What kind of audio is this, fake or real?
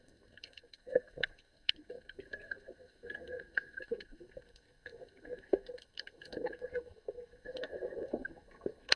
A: fake